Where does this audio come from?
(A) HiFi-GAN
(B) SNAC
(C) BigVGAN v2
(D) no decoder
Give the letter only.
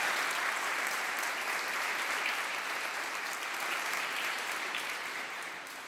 C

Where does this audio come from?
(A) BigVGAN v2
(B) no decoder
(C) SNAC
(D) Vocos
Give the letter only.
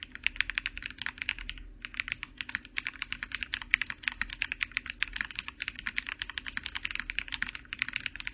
B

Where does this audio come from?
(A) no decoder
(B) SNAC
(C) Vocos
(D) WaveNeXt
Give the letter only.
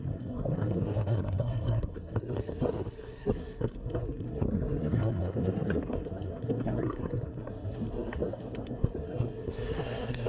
B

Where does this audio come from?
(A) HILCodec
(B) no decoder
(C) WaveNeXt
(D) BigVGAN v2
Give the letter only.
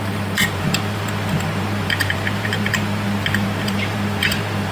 D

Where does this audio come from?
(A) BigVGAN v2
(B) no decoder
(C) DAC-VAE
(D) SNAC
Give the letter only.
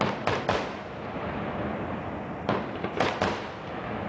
B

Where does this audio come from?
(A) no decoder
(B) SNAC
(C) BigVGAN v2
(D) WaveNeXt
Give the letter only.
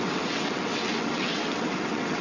D